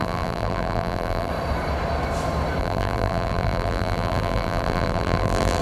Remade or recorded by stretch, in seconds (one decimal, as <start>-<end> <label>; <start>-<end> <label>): 0.0-1.3 remade; 1.3-2.6 recorded; 2.6-5.6 remade